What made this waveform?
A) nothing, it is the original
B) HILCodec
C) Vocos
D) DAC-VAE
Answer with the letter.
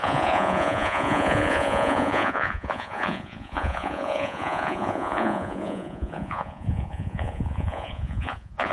C